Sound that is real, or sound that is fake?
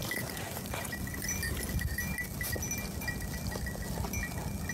real